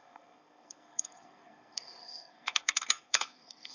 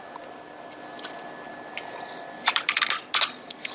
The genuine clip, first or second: second